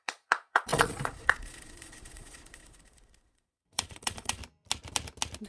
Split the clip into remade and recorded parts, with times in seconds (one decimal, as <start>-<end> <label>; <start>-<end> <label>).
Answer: 0.0-4.4 remade; 4.4-5.5 recorded